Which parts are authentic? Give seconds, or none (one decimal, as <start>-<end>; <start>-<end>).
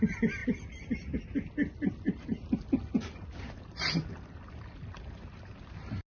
0.0-6.2